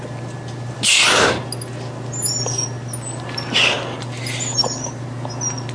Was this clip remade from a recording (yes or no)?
no